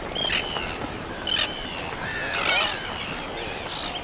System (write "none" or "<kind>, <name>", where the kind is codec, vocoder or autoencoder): none